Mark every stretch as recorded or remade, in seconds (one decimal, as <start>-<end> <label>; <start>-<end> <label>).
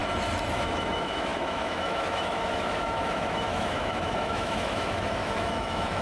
0.0-0.5 recorded; 0.5-6.0 remade